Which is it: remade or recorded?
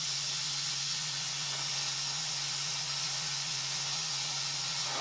remade